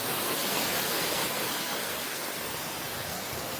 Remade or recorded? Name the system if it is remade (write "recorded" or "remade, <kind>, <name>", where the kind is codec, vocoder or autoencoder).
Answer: remade, codec, SNAC